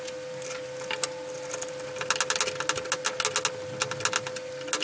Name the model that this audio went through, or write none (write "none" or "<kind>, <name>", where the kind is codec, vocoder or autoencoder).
none